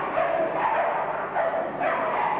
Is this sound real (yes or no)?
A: yes